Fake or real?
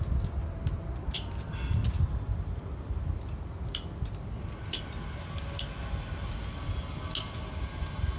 real